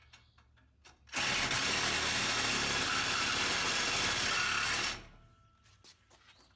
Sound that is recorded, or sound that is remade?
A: recorded